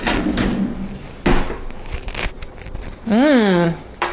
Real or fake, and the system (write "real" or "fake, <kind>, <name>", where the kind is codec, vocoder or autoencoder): real